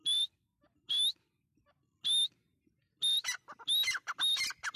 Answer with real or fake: real